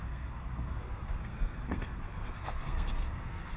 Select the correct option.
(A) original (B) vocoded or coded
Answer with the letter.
B